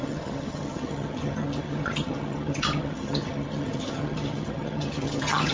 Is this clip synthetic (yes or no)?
yes